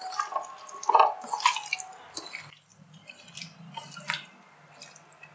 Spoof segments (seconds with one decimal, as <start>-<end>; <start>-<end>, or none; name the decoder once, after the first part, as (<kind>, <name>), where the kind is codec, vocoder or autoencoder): none